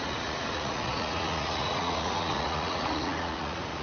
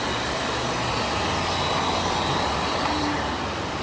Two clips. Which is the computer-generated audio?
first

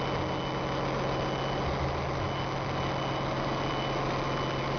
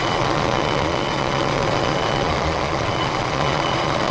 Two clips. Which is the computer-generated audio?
second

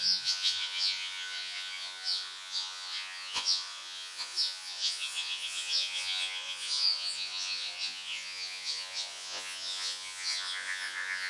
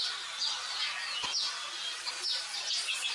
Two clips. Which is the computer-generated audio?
first